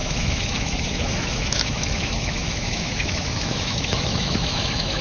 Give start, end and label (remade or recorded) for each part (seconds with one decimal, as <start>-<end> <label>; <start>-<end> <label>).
0.0-5.0 remade

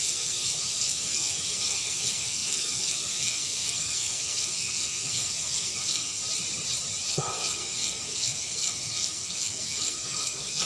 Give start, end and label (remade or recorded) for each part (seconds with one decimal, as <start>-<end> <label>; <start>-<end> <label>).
0.0-6.2 remade; 6.2-7.1 recorded; 7.1-10.7 remade